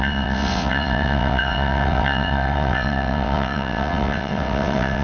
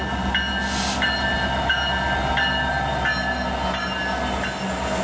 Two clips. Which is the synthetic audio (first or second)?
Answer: first